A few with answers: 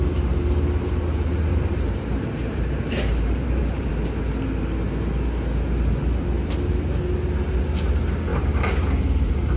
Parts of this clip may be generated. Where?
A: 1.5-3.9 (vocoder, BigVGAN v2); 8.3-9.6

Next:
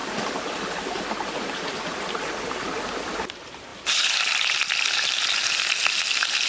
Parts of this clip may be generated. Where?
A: 0.0-1.0 (vocoder, BigVGAN v2); 3.7-4.5

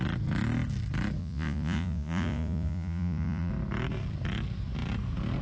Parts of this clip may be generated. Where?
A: 1.2-3.5 (vocoder, Vocos)

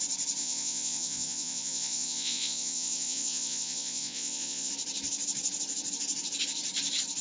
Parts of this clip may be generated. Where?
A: 0.4-4.7 (vocoder, Vocos)

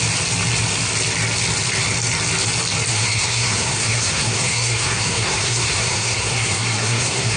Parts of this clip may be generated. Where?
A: 2.9-7.4 (codec, SNAC)

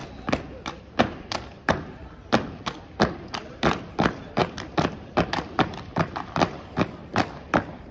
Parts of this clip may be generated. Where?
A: 0.8-4.4 (vocoder, BigVGAN v2); 5.6-7.9

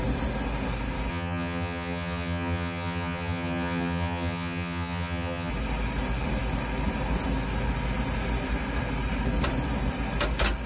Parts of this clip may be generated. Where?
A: 1.1-5.5 (vocoder, HiFi-GAN)